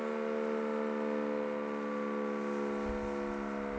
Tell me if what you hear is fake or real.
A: real